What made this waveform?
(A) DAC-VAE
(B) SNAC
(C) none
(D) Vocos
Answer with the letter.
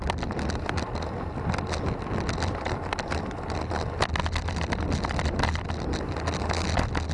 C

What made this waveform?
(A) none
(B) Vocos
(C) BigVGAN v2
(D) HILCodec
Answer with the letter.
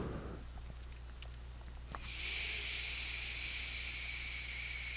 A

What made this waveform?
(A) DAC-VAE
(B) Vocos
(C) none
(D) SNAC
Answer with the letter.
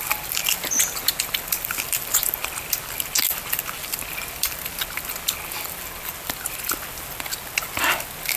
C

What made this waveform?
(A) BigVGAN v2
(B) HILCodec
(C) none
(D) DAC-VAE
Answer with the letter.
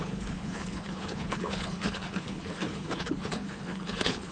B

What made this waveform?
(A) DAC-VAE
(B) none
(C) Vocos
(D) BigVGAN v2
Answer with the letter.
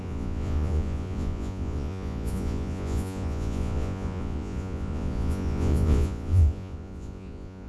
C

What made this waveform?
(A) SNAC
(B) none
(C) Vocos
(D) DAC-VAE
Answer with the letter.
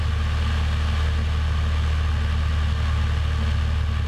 B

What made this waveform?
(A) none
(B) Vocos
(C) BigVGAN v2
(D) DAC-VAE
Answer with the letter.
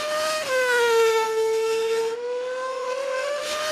D